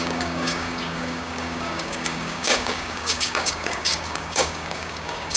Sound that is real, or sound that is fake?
fake